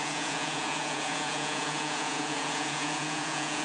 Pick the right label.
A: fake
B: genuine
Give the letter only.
A